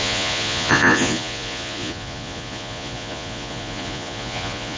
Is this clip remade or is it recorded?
remade